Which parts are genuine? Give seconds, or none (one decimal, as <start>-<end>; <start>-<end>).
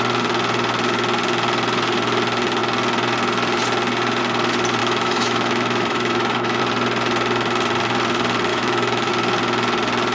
0.0-4.8; 6.6-8.5; 9.1-10.1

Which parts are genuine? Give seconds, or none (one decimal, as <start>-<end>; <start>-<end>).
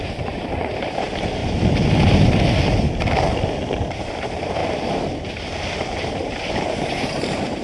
1.4-4.0; 4.6-6.1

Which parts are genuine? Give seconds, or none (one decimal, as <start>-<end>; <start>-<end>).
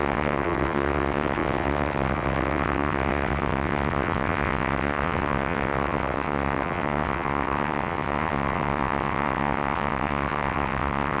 none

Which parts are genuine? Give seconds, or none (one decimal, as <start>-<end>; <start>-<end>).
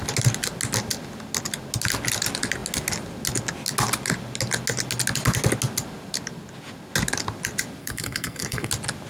0.0-7.8; 8.7-9.1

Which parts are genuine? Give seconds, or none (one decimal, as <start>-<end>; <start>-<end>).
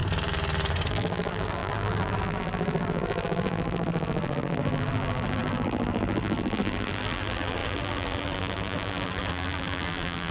0.0-0.9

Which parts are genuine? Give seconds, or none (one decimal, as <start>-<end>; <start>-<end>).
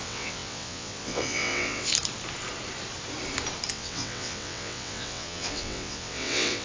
1.9-3.7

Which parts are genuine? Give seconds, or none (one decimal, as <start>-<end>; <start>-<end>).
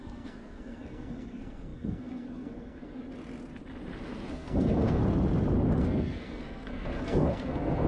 3.0-4.3; 5.0-5.8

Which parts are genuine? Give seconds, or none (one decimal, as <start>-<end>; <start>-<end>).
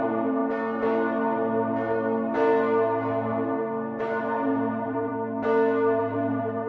0.4-4.2; 5.1-6.0